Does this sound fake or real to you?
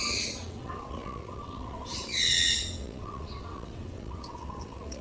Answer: fake